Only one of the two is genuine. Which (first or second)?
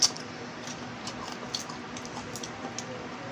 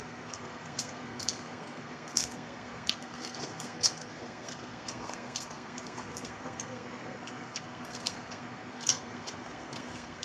first